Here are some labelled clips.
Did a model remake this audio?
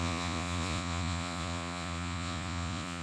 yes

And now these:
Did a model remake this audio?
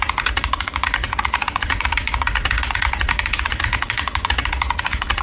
yes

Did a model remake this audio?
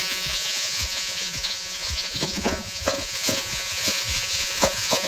yes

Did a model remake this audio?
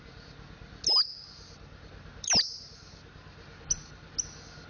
no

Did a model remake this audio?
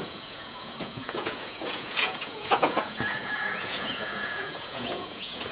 yes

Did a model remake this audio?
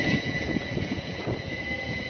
yes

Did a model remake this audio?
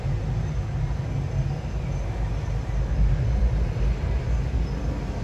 no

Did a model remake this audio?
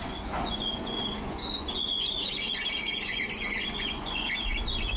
yes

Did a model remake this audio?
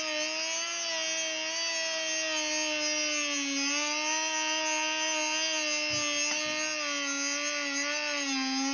no